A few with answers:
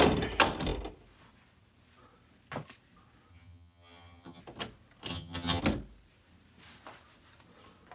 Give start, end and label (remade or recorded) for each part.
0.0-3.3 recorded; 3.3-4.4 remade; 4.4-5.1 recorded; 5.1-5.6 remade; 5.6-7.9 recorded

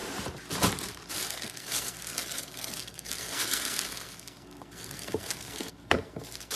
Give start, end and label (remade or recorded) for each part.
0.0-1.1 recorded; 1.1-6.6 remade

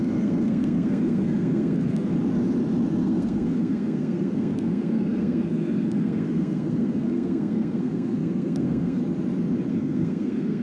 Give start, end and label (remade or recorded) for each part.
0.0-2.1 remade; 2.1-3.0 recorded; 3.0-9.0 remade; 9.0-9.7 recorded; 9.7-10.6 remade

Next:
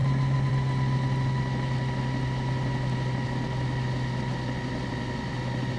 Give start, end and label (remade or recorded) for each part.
0.0-5.8 recorded